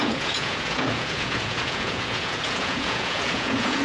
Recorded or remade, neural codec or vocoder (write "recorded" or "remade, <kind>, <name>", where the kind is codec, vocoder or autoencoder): remade, vocoder, Vocos